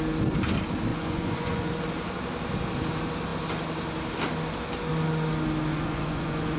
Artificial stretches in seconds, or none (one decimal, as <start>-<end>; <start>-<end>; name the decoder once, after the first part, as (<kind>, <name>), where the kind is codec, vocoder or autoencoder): 0.9-1.7 (vocoder, Vocos); 5.7-6.6